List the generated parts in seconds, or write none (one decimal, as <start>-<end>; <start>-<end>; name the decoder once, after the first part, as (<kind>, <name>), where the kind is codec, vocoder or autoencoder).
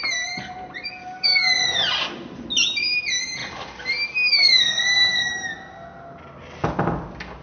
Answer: 1.0-1.5 (codec, DAC); 4.3-5.3